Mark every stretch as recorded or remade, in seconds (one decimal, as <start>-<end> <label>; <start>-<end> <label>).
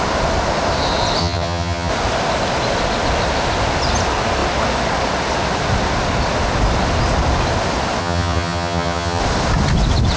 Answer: 0.0-1.2 recorded; 1.2-1.9 remade; 1.9-8.0 recorded; 8.0-9.2 remade; 9.2-10.2 recorded